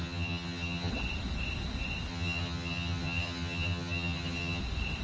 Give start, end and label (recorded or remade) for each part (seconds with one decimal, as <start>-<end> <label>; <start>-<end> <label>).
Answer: 0.0-0.9 remade; 0.9-2.1 recorded; 2.1-4.6 remade; 4.6-5.0 recorded